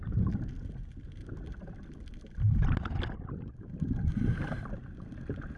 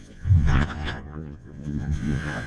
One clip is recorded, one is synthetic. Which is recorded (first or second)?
first